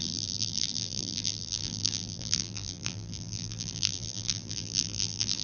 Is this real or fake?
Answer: fake